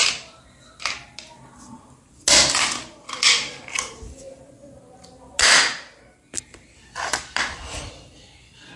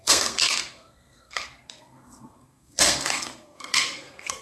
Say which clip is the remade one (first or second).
second